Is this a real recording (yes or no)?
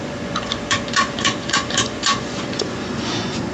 no